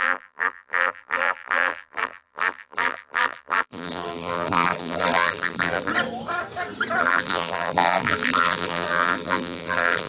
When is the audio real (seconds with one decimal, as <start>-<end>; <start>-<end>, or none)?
5.9-7.0